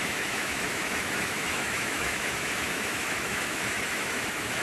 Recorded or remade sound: remade